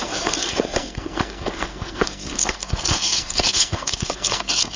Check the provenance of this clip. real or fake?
fake